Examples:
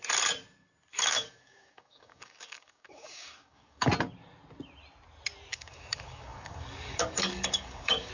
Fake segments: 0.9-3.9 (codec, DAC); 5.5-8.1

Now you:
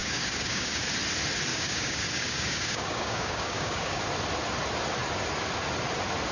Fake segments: 0.0-0.8 (codec, DAC); 1.5-4.0